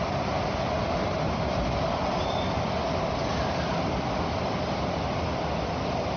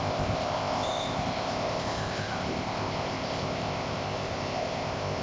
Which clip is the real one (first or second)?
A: first